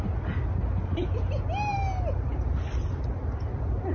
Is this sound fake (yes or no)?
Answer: no